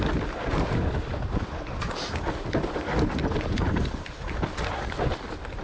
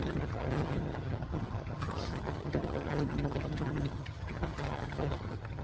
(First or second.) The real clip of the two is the first